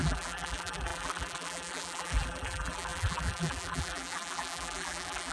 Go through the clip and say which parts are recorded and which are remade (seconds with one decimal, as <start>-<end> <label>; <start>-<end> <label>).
0.0-5.3 remade